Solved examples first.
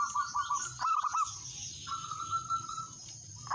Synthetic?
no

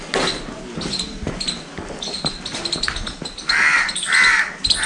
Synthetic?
no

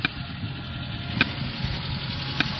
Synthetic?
no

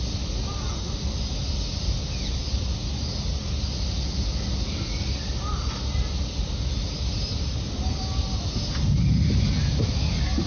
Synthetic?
no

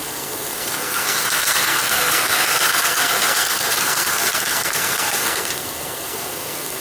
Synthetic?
yes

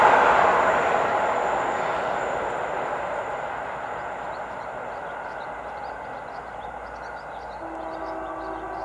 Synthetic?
no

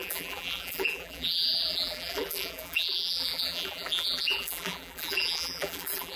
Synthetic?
yes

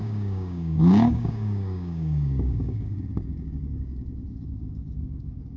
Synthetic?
yes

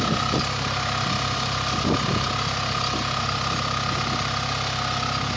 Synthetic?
no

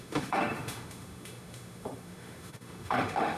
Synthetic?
yes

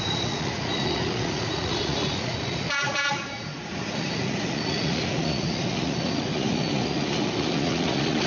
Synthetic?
yes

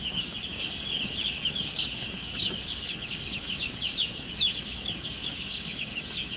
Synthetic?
yes